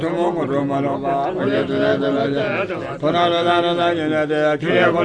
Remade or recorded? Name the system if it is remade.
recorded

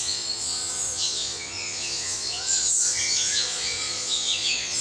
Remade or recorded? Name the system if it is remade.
remade, vocoder, Vocos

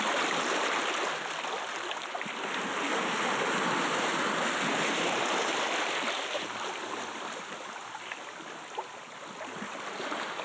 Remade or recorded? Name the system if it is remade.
recorded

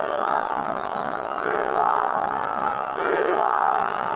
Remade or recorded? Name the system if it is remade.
remade, vocoder, Vocos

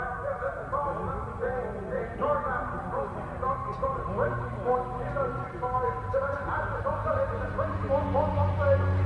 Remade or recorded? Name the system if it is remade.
recorded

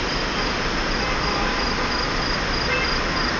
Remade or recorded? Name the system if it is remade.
recorded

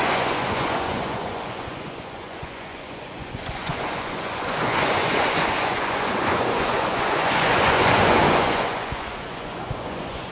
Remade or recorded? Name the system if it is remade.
remade, vocoder, Vocos